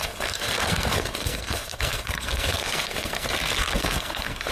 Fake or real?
fake